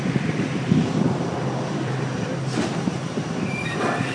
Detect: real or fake fake